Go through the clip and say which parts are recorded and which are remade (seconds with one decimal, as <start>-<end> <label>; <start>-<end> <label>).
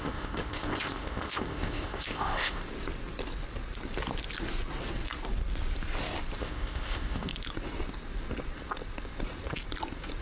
0.0-2.6 remade; 2.6-6.4 recorded; 6.4-7.3 remade; 7.3-10.2 recorded